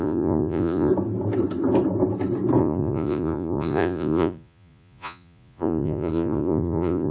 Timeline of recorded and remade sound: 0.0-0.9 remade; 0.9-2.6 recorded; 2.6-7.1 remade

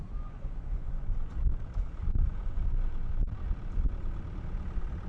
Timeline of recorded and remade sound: 0.0-1.3 remade; 1.3-2.0 recorded; 2.0-3.2 remade; 3.2-5.1 recorded

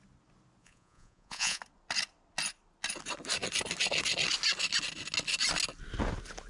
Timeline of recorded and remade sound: 0.0-0.6 recorded; 0.6-1.6 remade; 1.6-6.5 recorded

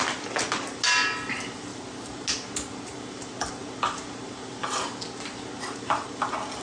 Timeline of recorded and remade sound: 0.0-6.6 recorded

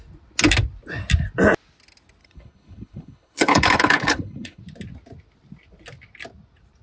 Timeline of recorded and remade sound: 0.0-2.2 recorded; 2.2-4.6 remade; 4.6-6.8 recorded